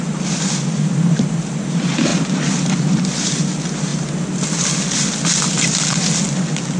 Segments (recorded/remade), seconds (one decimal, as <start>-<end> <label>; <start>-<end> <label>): 0.0-6.8 recorded